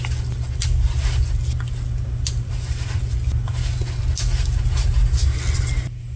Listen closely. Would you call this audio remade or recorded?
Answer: recorded